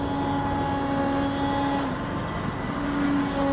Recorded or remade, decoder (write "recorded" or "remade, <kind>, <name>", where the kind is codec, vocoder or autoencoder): recorded